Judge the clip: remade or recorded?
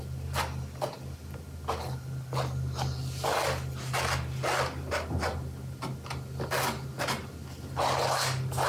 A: recorded